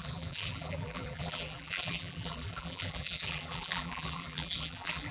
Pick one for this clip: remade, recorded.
remade